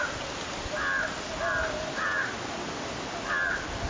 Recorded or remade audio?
recorded